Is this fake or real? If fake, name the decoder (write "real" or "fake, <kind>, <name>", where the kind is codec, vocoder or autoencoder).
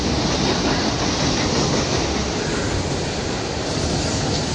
real